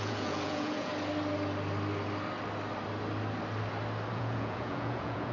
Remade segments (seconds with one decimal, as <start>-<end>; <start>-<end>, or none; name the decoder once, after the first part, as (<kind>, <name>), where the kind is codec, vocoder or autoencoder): 0.0-0.9 (vocoder, Vocos); 4.1-5.3